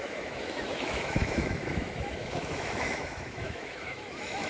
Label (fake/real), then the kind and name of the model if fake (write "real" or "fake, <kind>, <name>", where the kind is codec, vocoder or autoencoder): fake, autoencoder, DAC-VAE